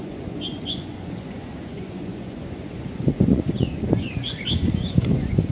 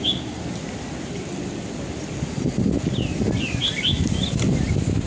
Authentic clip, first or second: second